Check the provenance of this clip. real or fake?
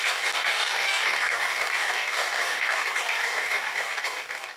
fake